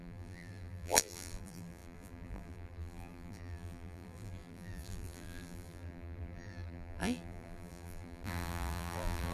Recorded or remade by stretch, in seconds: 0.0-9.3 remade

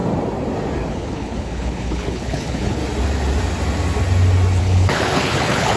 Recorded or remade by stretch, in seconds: 0.0-0.9 recorded; 0.9-2.8 remade; 2.8-4.6 recorded; 4.6-5.8 remade